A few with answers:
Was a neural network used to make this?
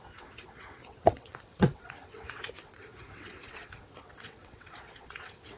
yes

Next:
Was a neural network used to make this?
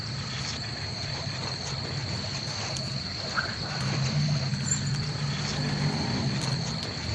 no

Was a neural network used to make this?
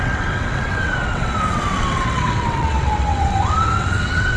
yes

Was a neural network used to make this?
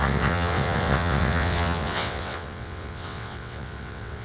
yes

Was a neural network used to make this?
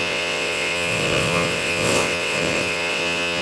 yes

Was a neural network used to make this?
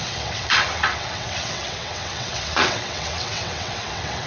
yes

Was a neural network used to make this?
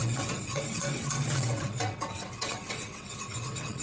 yes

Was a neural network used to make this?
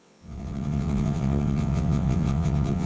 yes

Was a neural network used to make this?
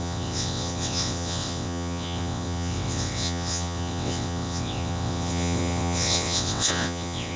yes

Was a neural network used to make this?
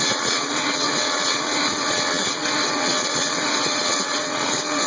yes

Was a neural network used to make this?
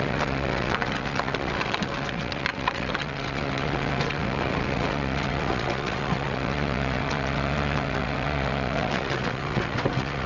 yes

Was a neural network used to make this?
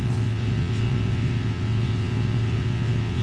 yes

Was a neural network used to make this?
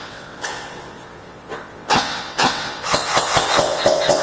yes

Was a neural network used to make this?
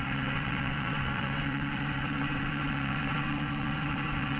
yes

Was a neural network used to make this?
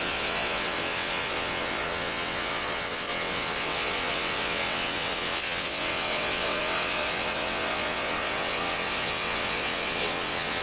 yes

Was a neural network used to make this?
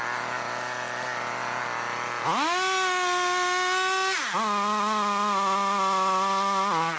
no